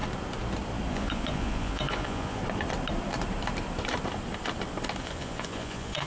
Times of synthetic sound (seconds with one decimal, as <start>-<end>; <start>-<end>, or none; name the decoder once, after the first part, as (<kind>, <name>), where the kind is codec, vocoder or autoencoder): 0.9-2.4 (vocoder, Vocos); 5.0-6.1